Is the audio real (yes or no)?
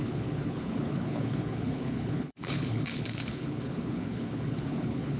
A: no